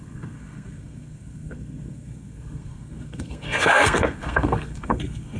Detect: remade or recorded remade